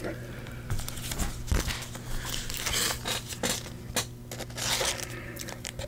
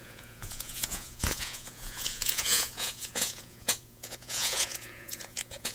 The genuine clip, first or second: first